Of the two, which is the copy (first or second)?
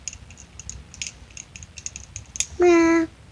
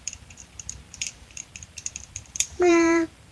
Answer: second